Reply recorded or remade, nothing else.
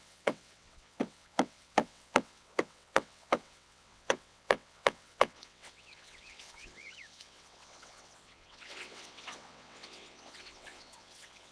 remade